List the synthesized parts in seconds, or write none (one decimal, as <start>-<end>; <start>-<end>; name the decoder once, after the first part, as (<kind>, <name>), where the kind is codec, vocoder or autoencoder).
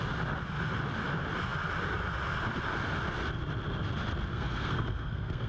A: 4.3-5.5 (codec, SNAC)